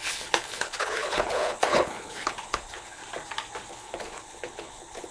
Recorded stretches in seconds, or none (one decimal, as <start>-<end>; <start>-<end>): 3.0-3.7